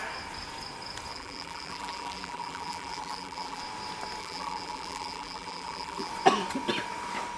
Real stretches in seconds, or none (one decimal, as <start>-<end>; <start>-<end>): 0.0-1.1; 3.6-4.2; 6.1-7.4